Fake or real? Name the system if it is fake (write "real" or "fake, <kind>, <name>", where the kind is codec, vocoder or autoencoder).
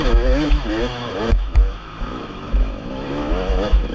fake, autoencoder, DAC-VAE